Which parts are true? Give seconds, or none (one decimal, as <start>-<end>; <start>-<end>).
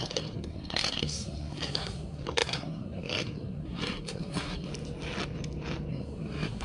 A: 4.7-5.9